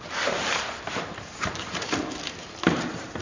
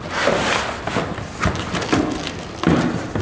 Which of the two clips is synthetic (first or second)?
first